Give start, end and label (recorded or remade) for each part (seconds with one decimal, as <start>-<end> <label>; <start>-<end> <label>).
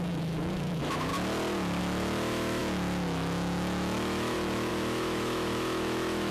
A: 0.0-1.1 remade; 1.1-1.8 recorded; 1.8-6.3 remade